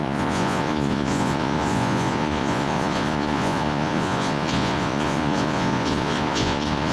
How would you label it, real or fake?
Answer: fake